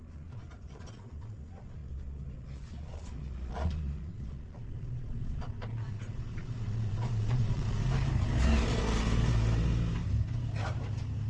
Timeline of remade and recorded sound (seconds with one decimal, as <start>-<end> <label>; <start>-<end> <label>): 0.0-7.8 remade; 7.8-11.3 recorded